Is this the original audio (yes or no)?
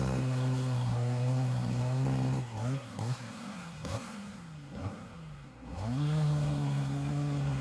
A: no